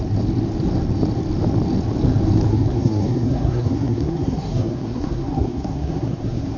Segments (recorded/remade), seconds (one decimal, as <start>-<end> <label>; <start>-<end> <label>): 0.0-2.5 recorded; 2.5-6.6 remade